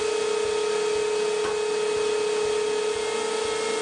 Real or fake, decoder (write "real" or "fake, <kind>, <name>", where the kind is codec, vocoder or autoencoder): real